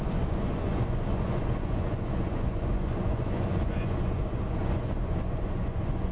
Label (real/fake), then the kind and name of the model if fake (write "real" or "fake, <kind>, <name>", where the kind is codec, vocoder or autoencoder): fake, vocoder, Vocos